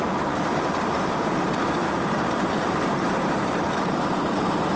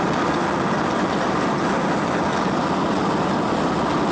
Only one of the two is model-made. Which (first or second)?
first